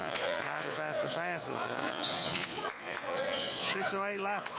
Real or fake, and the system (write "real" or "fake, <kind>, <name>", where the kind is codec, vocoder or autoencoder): fake, vocoder, Vocos